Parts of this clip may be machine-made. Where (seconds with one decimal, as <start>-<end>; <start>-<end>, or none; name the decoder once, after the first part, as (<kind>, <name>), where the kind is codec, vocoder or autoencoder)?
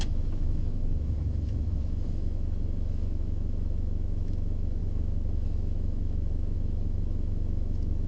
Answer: 0.0-8.1 (autoencoder, DAC-VAE)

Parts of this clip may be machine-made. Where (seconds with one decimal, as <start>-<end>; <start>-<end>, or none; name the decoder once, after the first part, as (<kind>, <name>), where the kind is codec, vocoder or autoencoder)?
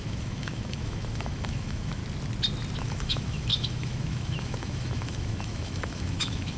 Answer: 0.0-2.0 (autoencoder, DAC-VAE); 2.8-6.6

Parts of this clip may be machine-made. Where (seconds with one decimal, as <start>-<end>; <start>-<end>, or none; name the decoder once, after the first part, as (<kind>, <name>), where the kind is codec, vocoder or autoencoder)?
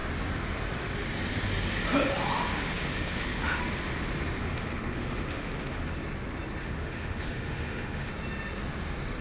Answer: 2.5-3.6 (autoencoder, DAC-VAE); 4.4-5.8; 6.6-8.1